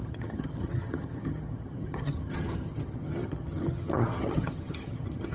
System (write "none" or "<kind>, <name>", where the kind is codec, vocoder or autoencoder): vocoder, HiFi-GAN